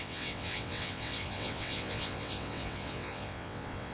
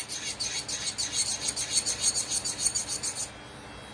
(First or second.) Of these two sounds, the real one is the second